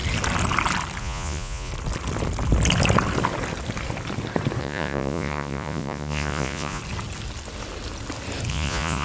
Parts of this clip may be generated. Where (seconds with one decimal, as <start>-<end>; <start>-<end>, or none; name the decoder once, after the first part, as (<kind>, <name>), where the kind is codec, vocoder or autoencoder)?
1.0-1.7 (vocoder, Vocos); 4.6-6.8; 8.5-9.0